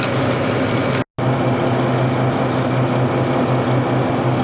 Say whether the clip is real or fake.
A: real